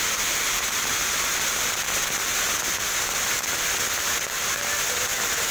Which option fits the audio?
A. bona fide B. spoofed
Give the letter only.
A